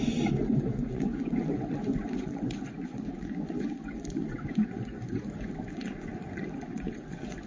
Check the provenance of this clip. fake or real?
fake